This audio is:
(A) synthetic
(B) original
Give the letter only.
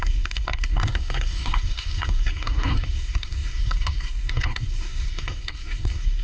A